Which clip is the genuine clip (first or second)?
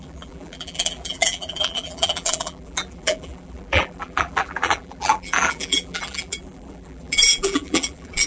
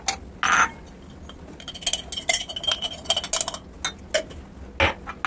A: second